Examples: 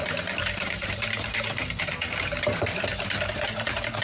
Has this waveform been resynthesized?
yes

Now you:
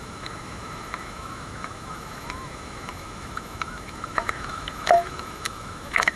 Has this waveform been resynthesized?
yes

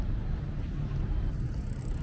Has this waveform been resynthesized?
no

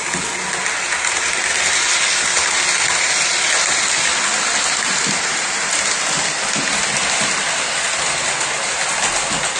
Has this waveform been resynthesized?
no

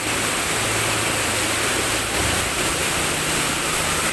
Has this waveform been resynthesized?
no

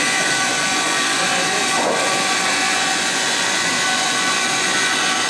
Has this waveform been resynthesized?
yes